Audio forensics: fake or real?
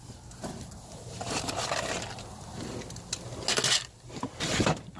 real